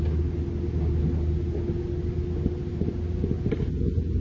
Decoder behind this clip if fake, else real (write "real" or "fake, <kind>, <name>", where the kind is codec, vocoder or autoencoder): real